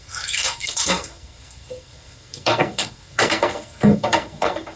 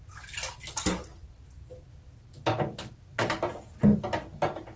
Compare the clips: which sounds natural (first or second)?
second